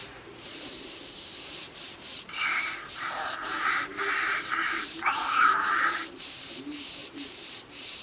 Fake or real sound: fake